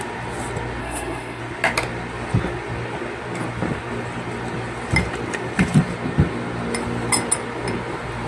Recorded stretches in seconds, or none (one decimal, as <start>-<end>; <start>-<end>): 0.0-0.8; 1.4-8.3